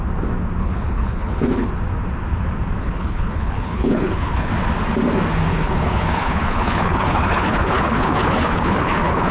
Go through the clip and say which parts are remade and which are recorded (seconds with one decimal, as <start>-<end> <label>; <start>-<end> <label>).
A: 0.0-0.6 recorded; 0.6-1.7 remade; 1.7-2.8 recorded; 2.8-4.5 remade; 4.5-5.5 recorded; 5.5-9.3 remade